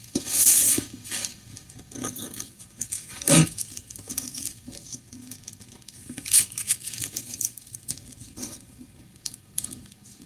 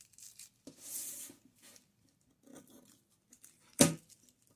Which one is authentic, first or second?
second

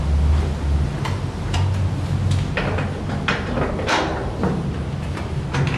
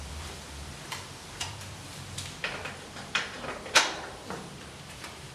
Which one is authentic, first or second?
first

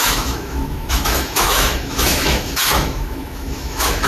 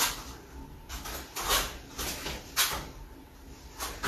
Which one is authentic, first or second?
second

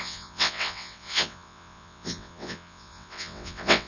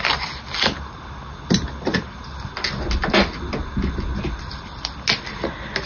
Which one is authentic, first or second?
second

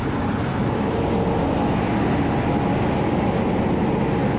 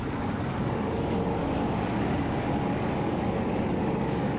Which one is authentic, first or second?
first